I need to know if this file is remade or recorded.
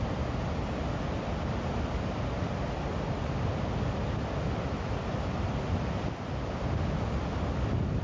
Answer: recorded